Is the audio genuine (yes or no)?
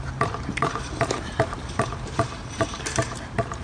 no